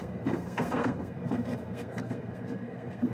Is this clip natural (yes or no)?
no